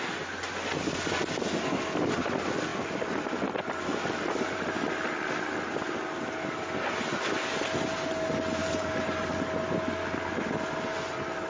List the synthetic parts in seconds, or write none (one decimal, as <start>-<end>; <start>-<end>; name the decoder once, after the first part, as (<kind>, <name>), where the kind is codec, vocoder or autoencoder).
8.6-9.3 (vocoder, BigVGAN v2)